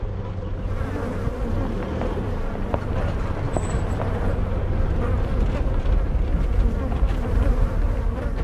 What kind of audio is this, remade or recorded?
recorded